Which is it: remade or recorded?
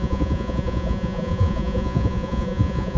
remade